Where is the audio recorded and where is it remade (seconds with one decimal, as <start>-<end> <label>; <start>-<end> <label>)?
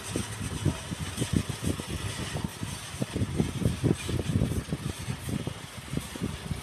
0.0-2.5 recorded; 2.5-3.8 remade; 3.8-6.6 recorded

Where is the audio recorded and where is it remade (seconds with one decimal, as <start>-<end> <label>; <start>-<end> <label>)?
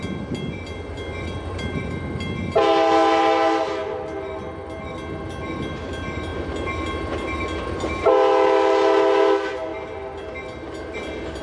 0.0-11.4 recorded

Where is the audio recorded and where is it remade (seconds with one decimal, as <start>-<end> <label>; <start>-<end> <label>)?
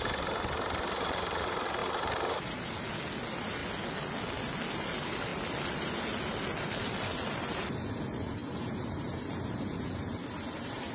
0.0-1.8 recorded; 1.8-2.7 remade; 2.7-8.4 recorded; 8.4-9.8 remade; 9.8-10.9 recorded